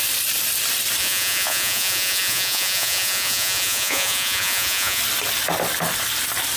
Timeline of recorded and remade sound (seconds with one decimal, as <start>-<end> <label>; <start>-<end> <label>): 0.0-1.0 recorded; 1.0-5.0 remade; 5.0-6.6 recorded